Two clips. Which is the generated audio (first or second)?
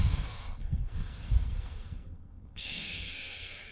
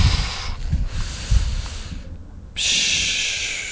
first